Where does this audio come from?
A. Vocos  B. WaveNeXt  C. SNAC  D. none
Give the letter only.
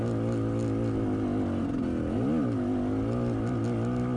D